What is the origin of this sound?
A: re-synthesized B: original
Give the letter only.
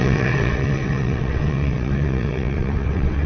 A